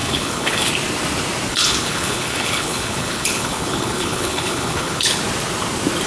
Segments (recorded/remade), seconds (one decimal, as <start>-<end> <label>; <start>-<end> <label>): 0.0-0.7 remade; 0.7-1.5 recorded; 1.5-5.2 remade; 5.2-6.1 recorded